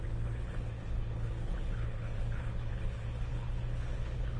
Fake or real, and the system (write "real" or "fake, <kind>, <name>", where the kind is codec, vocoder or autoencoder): fake, codec, HILCodec